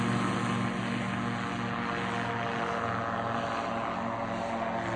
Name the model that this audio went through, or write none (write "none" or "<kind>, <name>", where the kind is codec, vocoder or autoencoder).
none